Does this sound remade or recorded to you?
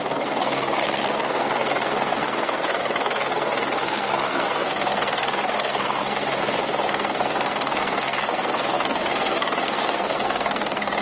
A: remade